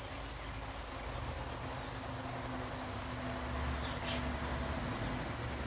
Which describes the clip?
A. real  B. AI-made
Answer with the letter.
A